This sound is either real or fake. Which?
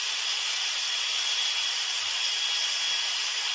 real